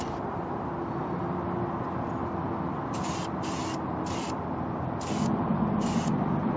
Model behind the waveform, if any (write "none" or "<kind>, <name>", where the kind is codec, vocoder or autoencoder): none